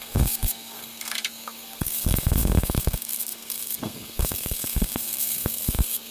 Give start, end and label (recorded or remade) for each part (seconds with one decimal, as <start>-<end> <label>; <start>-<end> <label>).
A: 0.0-6.1 remade